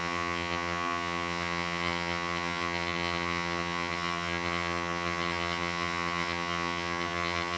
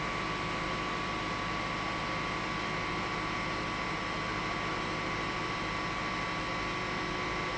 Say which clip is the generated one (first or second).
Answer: first